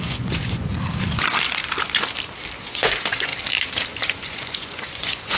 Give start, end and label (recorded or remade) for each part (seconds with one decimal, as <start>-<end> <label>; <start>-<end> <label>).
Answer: 0.0-0.7 remade; 0.7-2.6 recorded; 2.6-3.3 remade; 3.3-4.1 recorded; 4.1-5.4 remade